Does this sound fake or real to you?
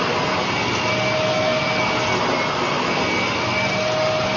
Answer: real